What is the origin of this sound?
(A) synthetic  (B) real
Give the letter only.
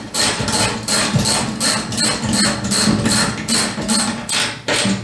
B